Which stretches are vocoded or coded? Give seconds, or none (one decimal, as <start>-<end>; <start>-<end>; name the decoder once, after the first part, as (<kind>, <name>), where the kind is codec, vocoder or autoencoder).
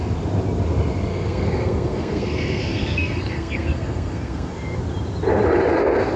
1.1-4.8 (codec, SNAC)